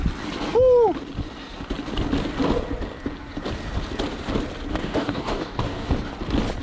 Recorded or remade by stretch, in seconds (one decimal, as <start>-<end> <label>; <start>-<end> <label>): 0.0-4.7 recorded; 4.7-5.9 remade; 5.9-6.6 recorded